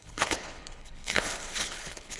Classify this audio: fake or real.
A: fake